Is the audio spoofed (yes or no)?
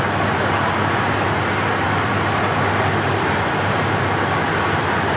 no